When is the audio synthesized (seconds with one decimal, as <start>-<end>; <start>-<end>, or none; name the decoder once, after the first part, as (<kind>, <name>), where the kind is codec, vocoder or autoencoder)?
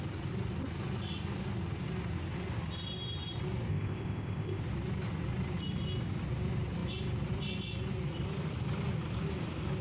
3.7-4.6 (codec, ZipCodec)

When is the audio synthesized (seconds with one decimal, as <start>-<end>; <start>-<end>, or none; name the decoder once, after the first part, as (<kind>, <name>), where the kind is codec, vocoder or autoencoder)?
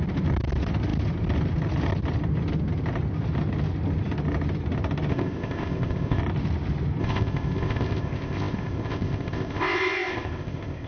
5.1-6.2 (codec, ZipCodec); 7.0-10.9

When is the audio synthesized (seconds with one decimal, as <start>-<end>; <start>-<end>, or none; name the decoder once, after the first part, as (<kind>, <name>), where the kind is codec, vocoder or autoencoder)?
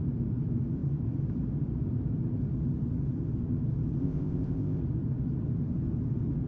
4.0-4.8 (codec, ZipCodec)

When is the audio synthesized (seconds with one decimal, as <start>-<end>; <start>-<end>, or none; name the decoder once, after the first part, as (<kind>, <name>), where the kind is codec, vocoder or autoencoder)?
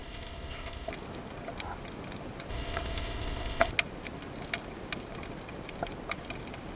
0.0-0.9 (codec, ZipCodec); 2.5-3.7